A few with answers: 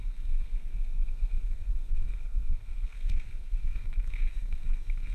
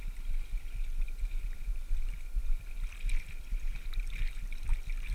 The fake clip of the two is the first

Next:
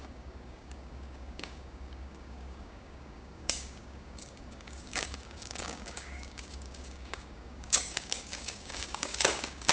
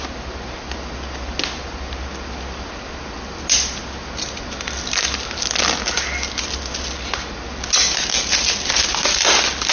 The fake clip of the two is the first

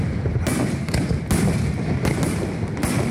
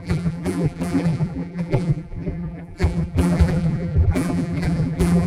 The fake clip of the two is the second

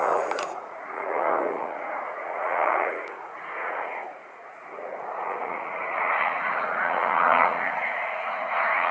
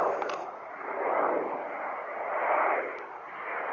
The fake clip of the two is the first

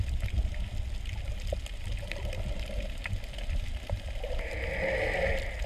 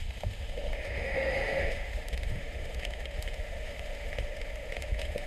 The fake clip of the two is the second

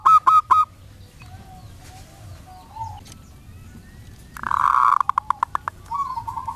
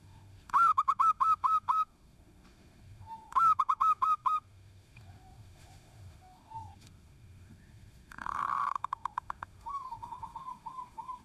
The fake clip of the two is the second